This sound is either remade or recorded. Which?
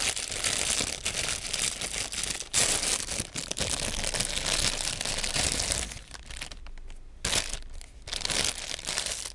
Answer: recorded